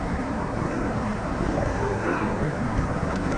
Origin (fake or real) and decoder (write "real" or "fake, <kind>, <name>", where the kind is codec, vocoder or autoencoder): fake, codec, SNAC